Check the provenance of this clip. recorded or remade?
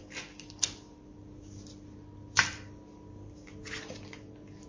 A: recorded